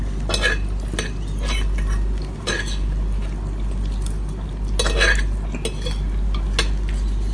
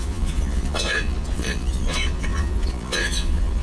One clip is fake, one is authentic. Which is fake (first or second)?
second